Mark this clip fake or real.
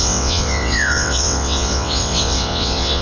fake